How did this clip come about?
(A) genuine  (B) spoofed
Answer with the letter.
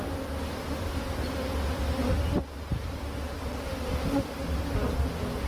A